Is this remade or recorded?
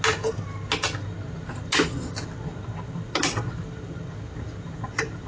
recorded